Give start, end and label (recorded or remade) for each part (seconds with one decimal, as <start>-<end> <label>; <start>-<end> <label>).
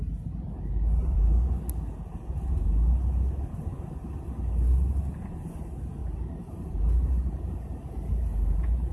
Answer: 0.0-6.0 recorded; 6.0-8.9 remade